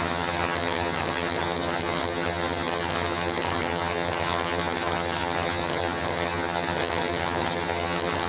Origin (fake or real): fake